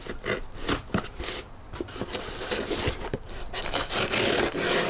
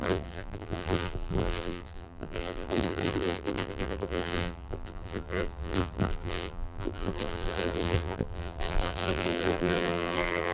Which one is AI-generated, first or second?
second